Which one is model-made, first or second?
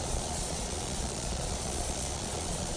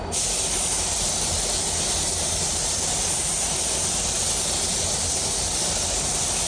first